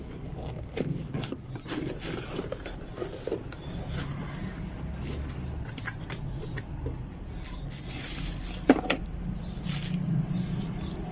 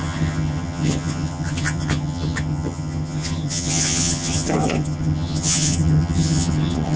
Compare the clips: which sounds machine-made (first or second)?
second